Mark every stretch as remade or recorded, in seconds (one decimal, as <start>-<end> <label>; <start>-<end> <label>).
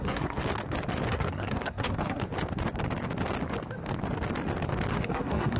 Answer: 0.0-0.4 remade; 0.4-1.1 recorded; 1.1-2.2 remade; 2.2-4.9 recorded; 4.9-5.6 remade